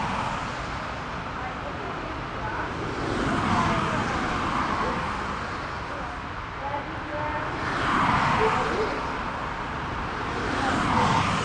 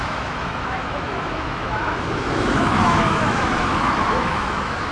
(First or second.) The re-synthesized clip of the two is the second